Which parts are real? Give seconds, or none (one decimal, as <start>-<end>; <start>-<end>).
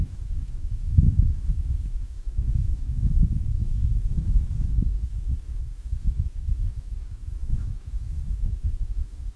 none